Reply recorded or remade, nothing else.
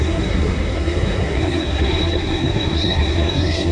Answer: remade